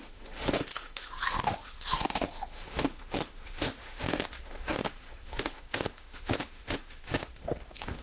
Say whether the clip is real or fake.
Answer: fake